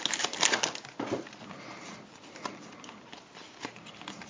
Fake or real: real